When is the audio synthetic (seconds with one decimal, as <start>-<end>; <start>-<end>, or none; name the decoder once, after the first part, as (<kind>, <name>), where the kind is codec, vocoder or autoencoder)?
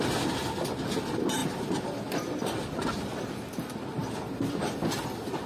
none